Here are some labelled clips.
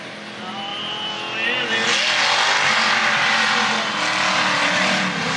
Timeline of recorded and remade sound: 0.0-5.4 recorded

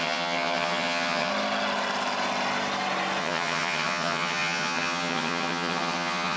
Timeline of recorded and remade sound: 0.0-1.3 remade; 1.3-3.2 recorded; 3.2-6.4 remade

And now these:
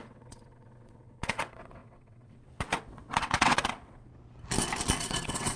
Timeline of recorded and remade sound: 0.0-4.1 remade; 4.1-5.0 recorded; 5.0-5.6 remade